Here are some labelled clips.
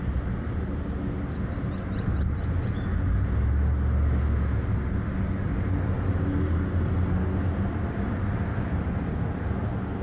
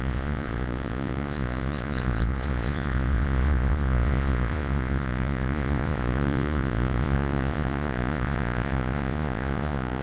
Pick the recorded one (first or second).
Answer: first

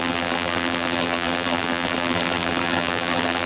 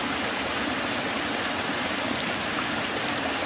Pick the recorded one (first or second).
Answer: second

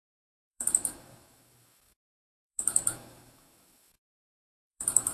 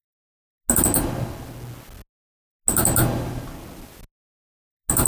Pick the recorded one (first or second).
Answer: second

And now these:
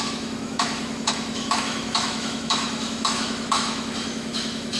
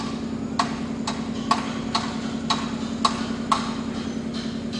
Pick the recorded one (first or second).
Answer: second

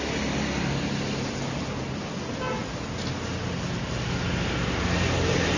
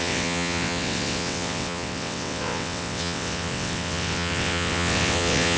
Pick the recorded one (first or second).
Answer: first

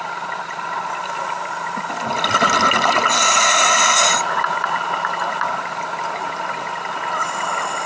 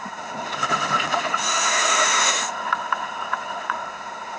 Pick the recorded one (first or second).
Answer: first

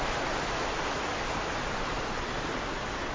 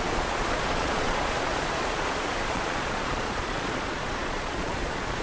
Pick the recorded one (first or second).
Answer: first